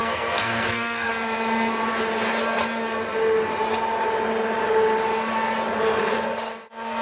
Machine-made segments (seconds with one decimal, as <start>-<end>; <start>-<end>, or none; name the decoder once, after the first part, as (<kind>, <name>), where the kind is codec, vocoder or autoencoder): 0.0-1.1 (codec, SNAC)